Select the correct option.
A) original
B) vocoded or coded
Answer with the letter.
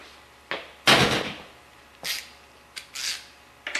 A